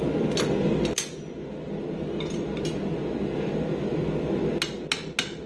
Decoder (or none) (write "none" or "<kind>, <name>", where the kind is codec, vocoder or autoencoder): none